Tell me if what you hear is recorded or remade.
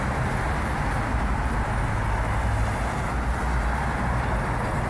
recorded